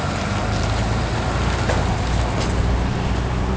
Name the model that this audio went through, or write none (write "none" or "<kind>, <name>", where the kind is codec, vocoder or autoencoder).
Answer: none